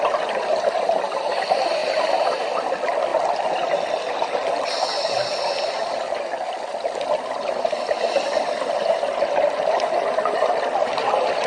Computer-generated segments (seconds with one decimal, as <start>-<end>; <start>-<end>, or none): none